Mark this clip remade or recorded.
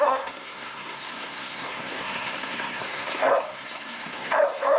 remade